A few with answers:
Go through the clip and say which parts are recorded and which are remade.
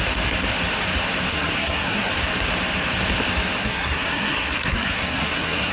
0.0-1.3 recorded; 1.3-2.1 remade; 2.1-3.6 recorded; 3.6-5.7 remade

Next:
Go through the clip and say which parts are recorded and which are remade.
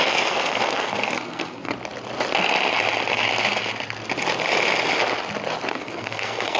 0.0-1.7 remade; 1.7-5.7 recorded; 5.7-6.6 remade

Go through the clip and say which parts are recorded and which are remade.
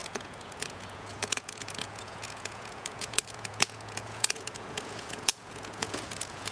0.0-6.5 remade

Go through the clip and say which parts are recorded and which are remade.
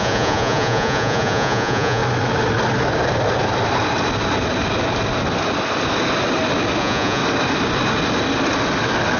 0.0-2.0 remade; 2.0-6.8 recorded; 6.8-7.2 remade; 7.2-9.2 recorded